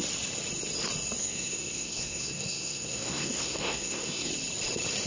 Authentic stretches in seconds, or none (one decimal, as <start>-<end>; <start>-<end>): 0.0-1.2; 4.3-5.1